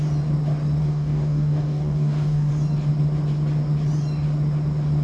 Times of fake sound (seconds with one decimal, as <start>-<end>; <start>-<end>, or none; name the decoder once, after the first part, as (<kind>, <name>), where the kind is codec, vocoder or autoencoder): 0.8-2.5 (codec, DAC)